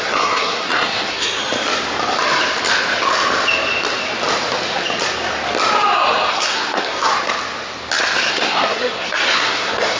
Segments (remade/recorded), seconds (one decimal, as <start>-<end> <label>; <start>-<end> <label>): 0.0-1.4 remade; 1.4-6.3 recorded; 6.3-7.1 remade; 7.1-8.3 recorded; 8.3-10.0 remade